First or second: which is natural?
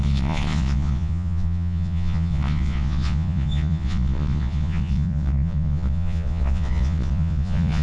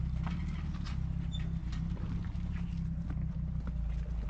second